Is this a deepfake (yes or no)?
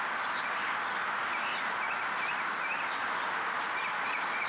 no